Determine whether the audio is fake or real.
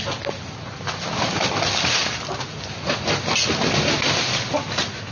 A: real